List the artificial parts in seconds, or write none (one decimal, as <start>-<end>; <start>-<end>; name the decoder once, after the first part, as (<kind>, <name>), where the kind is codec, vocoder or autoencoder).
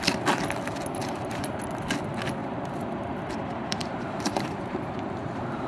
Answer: 1.0-1.6 (vocoder, BigVGAN v2); 2.4-5.7